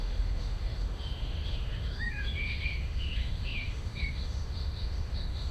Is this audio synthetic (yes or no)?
yes